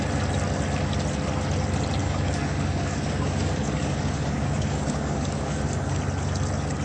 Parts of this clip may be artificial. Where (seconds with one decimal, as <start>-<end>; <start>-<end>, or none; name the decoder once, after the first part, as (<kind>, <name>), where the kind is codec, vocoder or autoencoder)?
2.0-6.0 (codec, DAC)